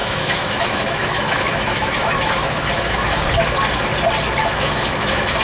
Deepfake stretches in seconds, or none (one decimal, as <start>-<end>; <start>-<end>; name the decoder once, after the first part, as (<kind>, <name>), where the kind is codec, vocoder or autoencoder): 0.0-3.2 (autoencoder, DAC-VAE); 4.4-5.4